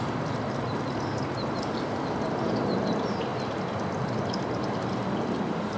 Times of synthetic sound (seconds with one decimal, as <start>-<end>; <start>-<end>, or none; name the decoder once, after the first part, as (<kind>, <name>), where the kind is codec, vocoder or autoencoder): none